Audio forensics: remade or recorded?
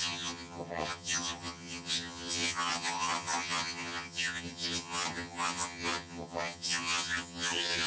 remade